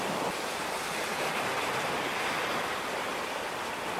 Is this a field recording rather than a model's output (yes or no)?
yes